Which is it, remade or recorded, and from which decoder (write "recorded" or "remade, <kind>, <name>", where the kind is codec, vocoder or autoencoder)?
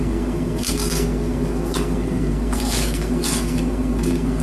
remade, codec, SNAC